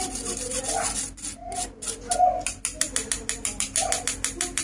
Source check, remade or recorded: recorded